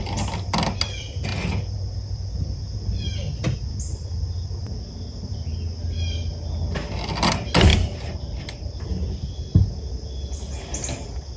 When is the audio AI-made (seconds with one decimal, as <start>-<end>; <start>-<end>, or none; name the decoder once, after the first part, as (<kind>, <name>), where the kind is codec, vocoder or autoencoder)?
none